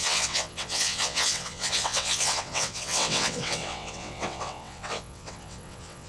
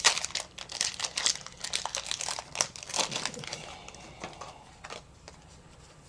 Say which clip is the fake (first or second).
first